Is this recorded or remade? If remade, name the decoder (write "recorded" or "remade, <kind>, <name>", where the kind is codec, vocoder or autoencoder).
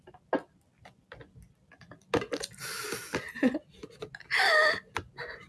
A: recorded